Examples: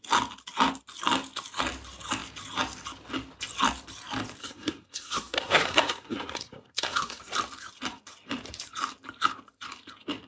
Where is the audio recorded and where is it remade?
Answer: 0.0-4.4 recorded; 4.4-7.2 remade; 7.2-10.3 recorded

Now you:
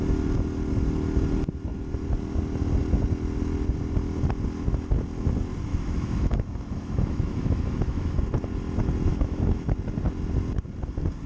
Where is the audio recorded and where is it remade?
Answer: 0.0-5.7 recorded; 5.7-8.2 remade; 8.2-9.1 recorded; 9.1-9.7 remade; 9.7-11.3 recorded

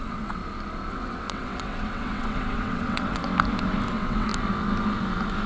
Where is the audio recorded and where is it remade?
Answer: 0.0-0.4 remade; 0.4-0.9 recorded; 0.9-3.2 remade; 3.2-3.9 recorded; 3.9-4.3 remade; 4.3-5.5 recorded

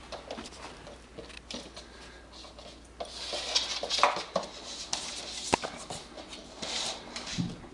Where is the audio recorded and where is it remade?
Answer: 0.0-1.1 remade; 1.1-5.7 recorded; 5.7-7.7 remade

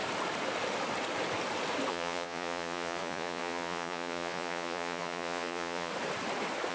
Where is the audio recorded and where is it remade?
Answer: 0.0-1.9 recorded; 1.9-5.9 remade; 5.9-6.7 recorded

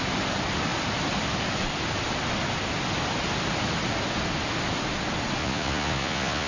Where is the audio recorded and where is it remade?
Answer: 0.0-5.4 recorded; 5.4-6.5 remade